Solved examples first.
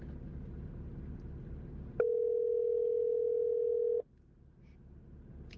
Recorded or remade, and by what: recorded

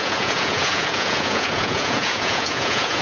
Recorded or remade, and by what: remade, vocoder, Vocos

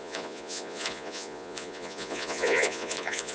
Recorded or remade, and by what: remade, vocoder, Vocos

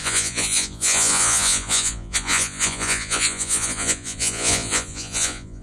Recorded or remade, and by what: remade, vocoder, Vocos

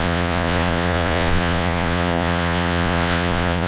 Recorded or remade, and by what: remade, vocoder, Vocos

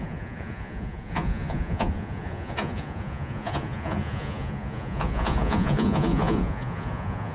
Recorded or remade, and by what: remade, vocoder, Vocos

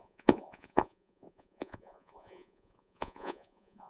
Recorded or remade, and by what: remade, vocoder, Vocos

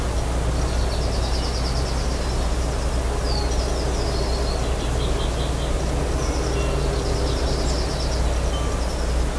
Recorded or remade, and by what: recorded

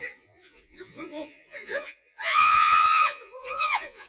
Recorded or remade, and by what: remade, vocoder, Vocos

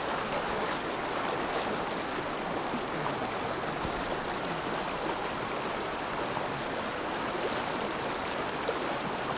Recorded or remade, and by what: recorded